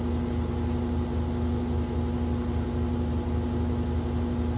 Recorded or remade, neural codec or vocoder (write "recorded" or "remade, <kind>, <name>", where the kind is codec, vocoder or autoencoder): recorded